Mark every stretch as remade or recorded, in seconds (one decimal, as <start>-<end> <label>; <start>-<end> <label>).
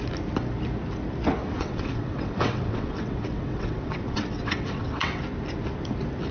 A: 0.0-1.4 recorded; 1.4-5.2 remade; 5.2-6.3 recorded